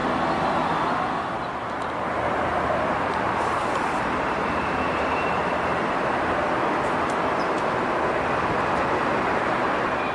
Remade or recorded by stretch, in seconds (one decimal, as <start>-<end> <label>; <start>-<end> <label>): 0.0-1.7 recorded; 1.7-5.7 remade; 5.7-9.4 recorded; 9.4-10.1 remade